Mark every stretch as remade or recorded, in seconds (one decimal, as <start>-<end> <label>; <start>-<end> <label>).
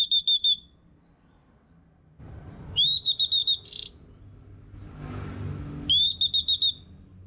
0.0-7.3 recorded